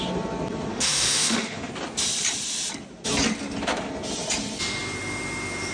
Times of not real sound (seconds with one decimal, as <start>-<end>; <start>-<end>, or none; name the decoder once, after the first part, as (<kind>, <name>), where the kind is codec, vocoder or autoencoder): 0.7-1.7 (autoencoder, DAC-VAE)